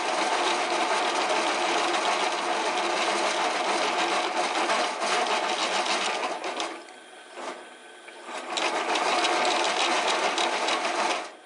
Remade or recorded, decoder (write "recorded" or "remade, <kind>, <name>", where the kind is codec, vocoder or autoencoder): recorded